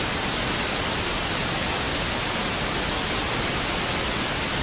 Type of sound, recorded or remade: recorded